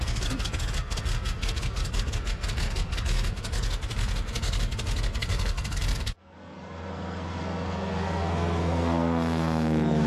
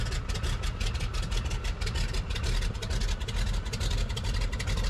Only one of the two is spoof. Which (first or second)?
first